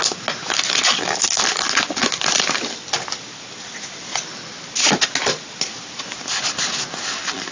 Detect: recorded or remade recorded